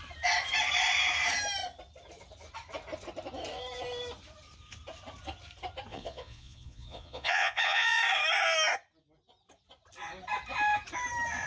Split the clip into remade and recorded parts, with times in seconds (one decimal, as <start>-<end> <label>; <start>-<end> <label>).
0.0-5.9 recorded; 5.9-8.0 remade; 8.0-11.5 recorded